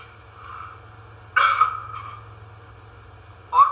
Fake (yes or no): no